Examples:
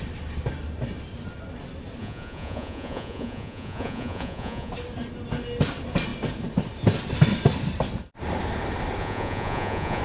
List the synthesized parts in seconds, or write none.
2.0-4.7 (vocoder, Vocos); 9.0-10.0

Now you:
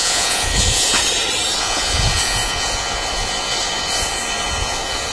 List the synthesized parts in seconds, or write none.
0.0-1.0 (vocoder, Vocos); 1.6-5.1

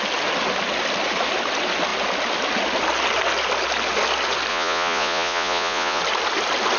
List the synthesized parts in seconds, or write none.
4.5-6.0 (vocoder, Vocos)

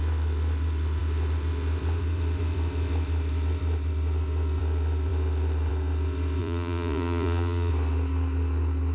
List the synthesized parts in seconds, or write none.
6.4-7.7 (vocoder, Vocos)

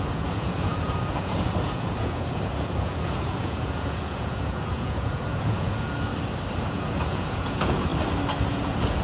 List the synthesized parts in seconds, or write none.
0.0-6.1 (vocoder, Vocos); 6.7-7.9; 8.5-9.0

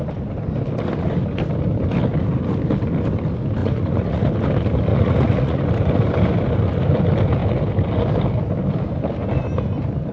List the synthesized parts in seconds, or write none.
3.6-4.3 (vocoder, Vocos); 4.9-5.6

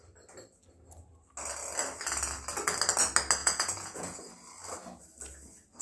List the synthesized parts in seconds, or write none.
3.4-4.3 (vocoder, Vocos)